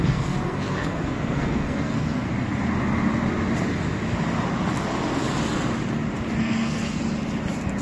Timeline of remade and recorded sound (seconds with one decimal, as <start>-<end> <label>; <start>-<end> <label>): 0.0-2.3 remade; 2.3-6.4 recorded; 6.4-7.0 remade; 7.0-7.8 recorded